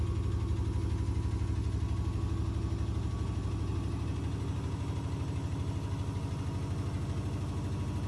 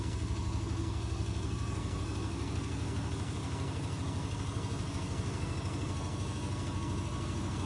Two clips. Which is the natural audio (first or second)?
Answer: first